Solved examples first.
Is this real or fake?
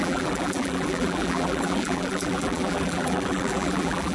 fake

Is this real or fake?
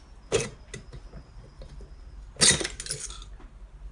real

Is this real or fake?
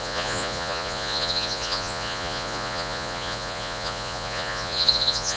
fake